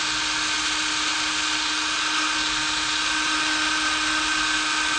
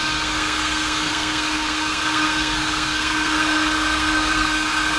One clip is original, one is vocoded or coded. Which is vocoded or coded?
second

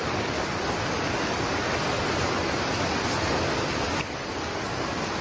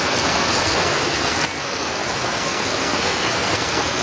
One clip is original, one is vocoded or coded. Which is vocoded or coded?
second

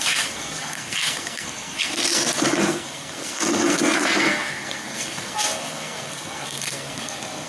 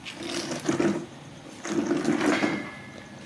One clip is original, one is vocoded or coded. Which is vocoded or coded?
first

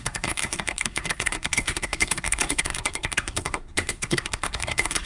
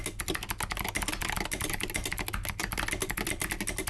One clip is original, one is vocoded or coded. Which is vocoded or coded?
first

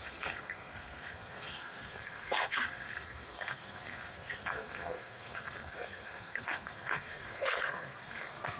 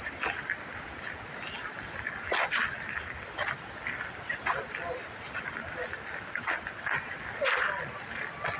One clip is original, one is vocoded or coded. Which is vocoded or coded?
first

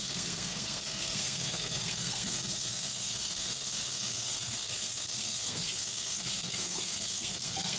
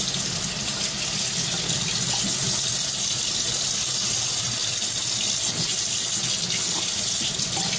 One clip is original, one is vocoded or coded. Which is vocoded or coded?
first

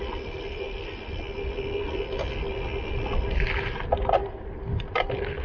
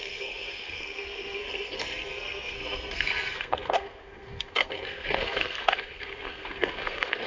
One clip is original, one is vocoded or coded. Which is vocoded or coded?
second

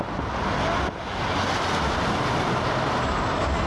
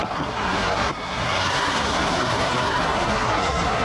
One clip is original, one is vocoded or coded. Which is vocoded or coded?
second